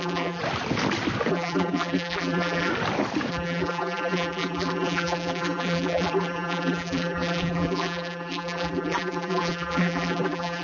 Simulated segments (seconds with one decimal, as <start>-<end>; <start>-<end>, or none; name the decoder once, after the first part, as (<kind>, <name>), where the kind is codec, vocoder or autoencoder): 0.0-0.4 (vocoder, BigVGAN v2); 1.3-2.7; 3.3-10.6